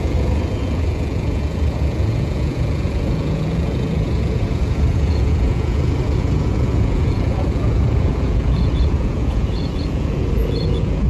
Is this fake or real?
fake